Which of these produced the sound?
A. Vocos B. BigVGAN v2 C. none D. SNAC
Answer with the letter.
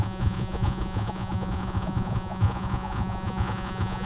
A